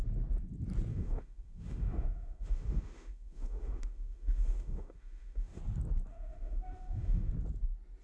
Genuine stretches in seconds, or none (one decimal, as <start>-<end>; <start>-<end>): 0.0-0.9; 5.6-6.1; 7.3-8.0